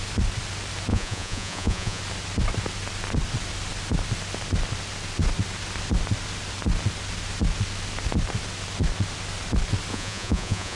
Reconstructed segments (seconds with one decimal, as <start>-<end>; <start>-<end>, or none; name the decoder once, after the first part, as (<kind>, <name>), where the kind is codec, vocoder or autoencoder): 0.9-2.0 (vocoder, Vocos); 9.9-10.8